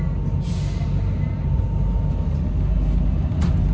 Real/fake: real